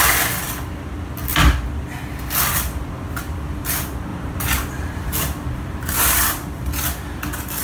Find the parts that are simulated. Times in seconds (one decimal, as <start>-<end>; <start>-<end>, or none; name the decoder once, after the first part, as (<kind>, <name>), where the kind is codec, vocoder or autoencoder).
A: 4.1-6.0 (vocoder, BigVGAN v2)

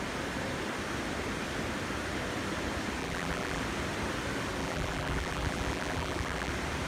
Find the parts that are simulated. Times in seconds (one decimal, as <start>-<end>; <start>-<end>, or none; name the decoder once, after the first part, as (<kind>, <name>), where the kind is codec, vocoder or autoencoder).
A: 3.0-3.6 (vocoder, BigVGAN v2); 4.6-6.5

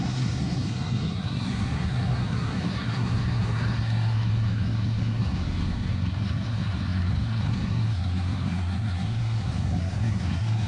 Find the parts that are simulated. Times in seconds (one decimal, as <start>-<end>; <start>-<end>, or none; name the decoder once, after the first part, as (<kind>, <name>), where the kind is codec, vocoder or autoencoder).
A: 0.0-10.7 (codec, SNAC)

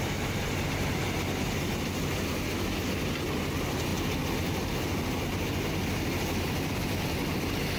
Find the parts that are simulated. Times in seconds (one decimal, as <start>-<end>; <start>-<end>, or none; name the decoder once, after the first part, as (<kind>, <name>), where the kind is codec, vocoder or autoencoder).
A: none